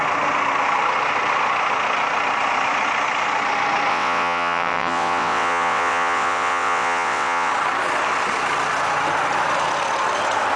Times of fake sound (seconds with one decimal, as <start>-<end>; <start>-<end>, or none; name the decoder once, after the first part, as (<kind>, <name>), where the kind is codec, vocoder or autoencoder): 3.9-7.5 (vocoder, WaveNeXt)

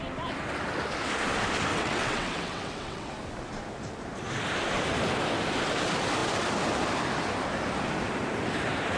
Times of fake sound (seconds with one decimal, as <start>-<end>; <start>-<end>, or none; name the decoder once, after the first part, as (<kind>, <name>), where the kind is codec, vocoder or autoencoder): 1.7-3.1 (vocoder, WaveNeXt)

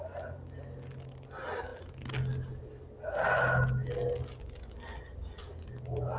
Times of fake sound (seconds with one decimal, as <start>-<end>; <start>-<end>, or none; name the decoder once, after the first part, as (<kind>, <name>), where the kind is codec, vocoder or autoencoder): none

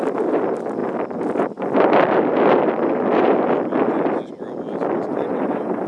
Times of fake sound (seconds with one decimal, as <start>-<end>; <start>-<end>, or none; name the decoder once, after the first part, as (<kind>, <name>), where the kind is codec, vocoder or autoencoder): 5.1-5.9 (vocoder, WaveNeXt)